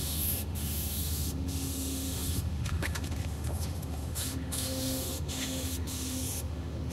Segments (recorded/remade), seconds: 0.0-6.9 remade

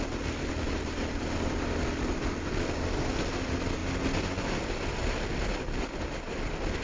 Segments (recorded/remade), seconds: 0.0-6.8 recorded

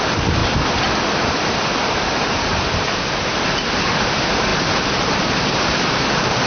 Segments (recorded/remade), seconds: 0.0-4.5 remade; 4.5-5.0 recorded; 5.0-6.5 remade

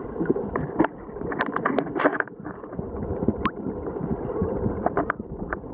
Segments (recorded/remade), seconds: 0.0-4.4 recorded; 4.4-4.9 remade; 4.9-5.7 recorded

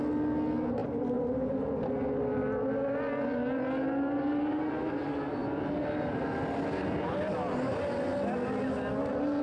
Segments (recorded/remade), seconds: 0.0-0.8 recorded; 0.8-1.9 remade; 1.9-5.4 recorded; 5.4-7.3 remade; 7.3-9.4 recorded

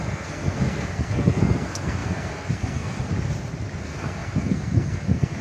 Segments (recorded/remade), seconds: 0.0-3.1 remade; 3.1-3.8 recorded; 3.8-5.4 remade

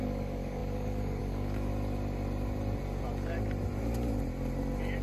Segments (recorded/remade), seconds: 0.0-1.7 remade; 1.7-5.0 recorded

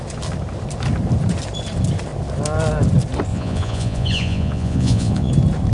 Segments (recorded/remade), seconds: 0.0-3.3 recorded; 3.3-5.3 remade; 5.3-5.7 recorded